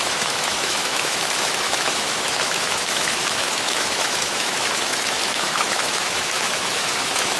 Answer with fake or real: fake